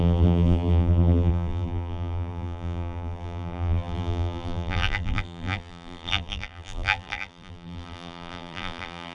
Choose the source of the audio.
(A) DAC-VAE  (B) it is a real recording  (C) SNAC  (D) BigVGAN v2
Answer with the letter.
D